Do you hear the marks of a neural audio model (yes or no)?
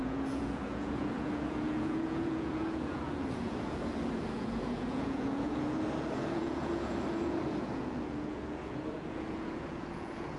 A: yes